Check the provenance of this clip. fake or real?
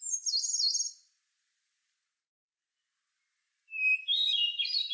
real